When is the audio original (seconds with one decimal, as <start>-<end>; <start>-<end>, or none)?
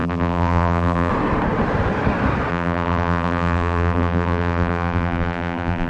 1.1-2.5